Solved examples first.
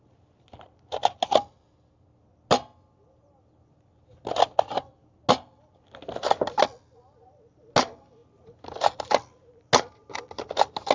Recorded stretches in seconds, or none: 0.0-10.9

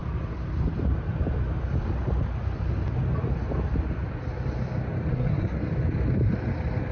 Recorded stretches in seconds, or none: 0.0-5.1; 5.7-6.9

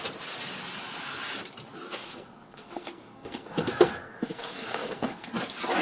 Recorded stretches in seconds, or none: 0.0-2.0; 5.3-5.8

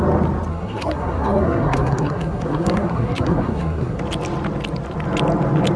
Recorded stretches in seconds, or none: 0.0-0.5; 4.0-5.8

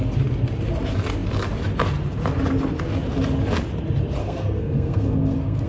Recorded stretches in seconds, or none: 0.0-4.2